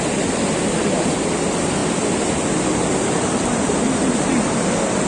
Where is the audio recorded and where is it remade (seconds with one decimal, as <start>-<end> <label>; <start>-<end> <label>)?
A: 0.0-5.1 recorded